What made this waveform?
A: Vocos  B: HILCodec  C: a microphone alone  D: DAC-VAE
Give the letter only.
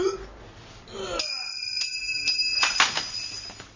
C